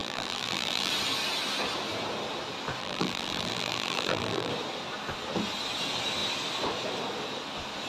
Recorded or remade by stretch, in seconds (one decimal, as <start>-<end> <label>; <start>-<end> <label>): 0.0-0.9 remade; 0.9-2.8 recorded; 2.8-4.5 remade; 4.5-7.9 recorded